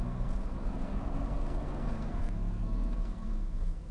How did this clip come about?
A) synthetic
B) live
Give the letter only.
A